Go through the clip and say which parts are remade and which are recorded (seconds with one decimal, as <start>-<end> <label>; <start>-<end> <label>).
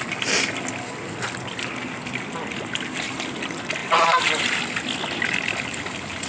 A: 0.0-6.3 recorded